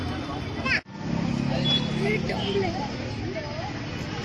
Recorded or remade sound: recorded